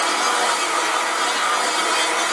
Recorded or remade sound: recorded